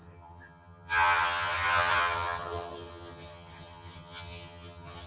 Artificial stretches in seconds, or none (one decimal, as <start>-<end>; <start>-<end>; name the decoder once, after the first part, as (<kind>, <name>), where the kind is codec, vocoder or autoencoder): 0.0-5.1 (vocoder, HiFi-GAN)